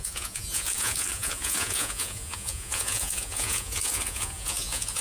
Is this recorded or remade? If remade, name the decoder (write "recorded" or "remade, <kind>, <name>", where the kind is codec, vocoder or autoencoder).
remade, vocoder, Vocos